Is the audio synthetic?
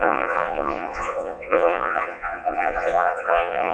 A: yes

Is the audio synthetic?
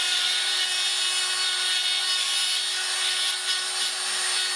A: no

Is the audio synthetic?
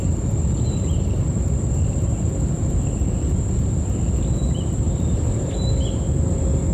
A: no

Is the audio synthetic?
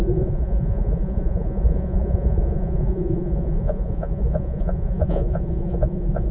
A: yes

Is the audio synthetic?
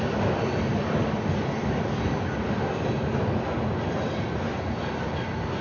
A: no